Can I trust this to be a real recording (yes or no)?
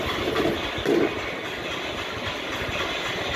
yes